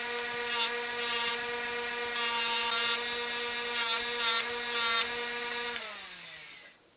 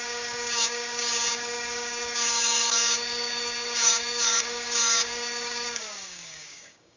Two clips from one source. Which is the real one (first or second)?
first